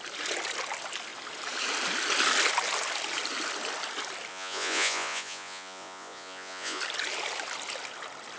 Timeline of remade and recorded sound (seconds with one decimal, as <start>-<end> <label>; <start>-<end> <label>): 0.0-4.3 recorded; 4.3-6.8 remade; 6.8-8.4 recorded